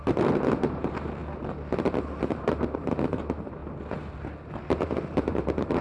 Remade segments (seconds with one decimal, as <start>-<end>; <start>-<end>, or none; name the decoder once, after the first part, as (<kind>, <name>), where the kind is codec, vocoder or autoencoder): 0.0-1.2 (vocoder, BigVGAN v2); 2.3-3.6; 4.8-5.8